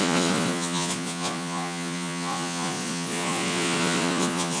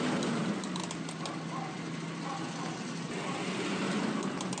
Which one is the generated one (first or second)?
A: first